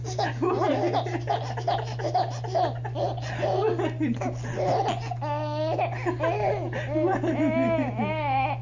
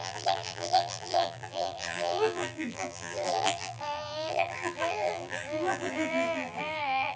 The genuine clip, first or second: first